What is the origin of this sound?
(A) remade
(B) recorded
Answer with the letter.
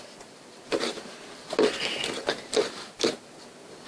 B